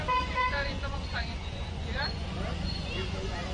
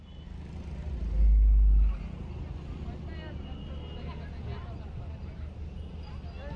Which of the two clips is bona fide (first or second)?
second